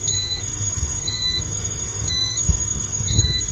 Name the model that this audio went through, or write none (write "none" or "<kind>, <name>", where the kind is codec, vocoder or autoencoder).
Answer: codec, SNAC